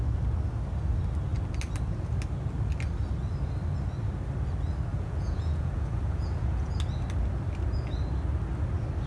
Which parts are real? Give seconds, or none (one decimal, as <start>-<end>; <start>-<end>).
0.0-4.9; 6.7-9.1